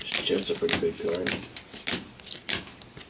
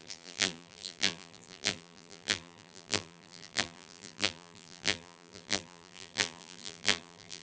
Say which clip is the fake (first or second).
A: second